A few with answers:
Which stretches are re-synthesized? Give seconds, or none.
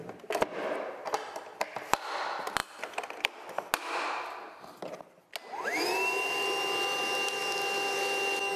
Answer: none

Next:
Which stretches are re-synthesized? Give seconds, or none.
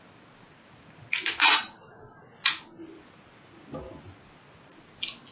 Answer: none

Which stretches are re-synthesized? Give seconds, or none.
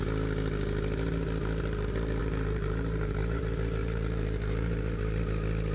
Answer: 2.2-3.4 (vocoder, BigVGAN v2); 3.8-5.2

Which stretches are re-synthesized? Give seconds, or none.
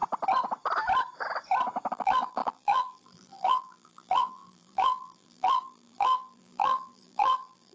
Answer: 1.9-7.7 (vocoder, BigVGAN v2)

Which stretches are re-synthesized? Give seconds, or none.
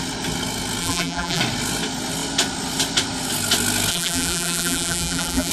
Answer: 0.8-1.4 (vocoder, BigVGAN v2); 3.9-5.5